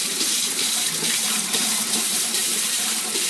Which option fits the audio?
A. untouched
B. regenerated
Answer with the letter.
B